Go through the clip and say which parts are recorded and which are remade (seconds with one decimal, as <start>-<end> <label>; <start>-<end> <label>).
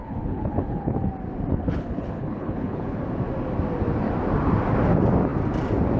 0.0-1.1 remade; 1.1-1.5 recorded; 1.5-3.0 remade; 3.0-6.0 recorded